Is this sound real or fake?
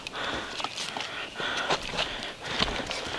real